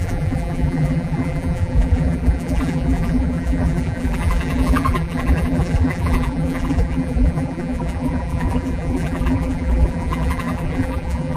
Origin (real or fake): fake